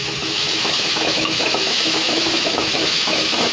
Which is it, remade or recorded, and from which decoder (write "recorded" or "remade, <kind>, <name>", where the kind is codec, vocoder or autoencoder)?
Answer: remade, autoencoder, DAC-VAE